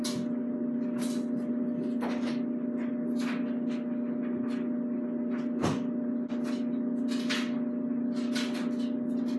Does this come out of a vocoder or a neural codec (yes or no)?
no